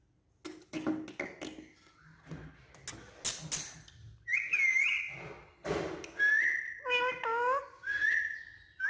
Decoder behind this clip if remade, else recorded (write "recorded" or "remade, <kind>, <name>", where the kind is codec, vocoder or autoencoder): recorded